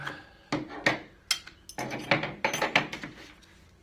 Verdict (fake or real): real